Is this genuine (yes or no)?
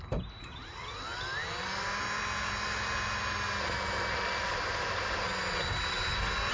yes